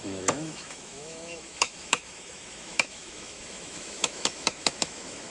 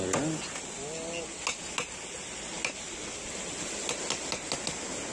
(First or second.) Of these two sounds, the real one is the second